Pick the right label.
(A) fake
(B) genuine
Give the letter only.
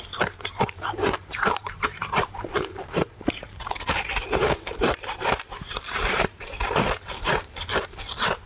A